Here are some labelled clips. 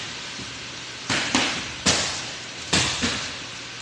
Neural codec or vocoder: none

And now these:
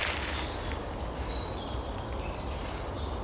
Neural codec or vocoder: none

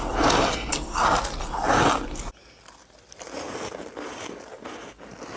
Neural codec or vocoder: none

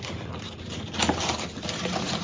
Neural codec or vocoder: none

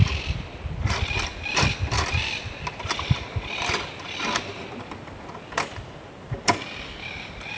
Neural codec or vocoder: none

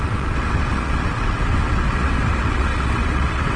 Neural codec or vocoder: vocoder, WaveNeXt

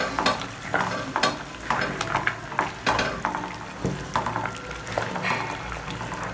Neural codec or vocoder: none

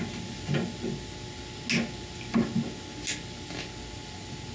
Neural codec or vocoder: none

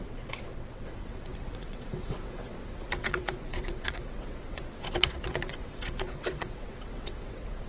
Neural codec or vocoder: vocoder, WaveNeXt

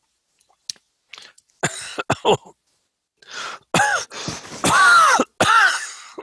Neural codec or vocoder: none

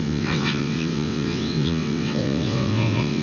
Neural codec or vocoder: vocoder, WaveNeXt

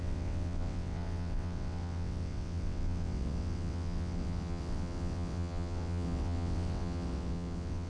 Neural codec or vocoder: vocoder, WaveNeXt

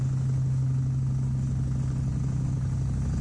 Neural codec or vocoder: none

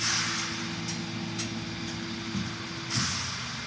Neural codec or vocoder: none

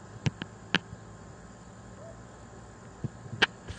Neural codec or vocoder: none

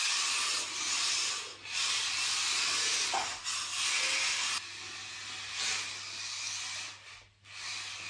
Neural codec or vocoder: none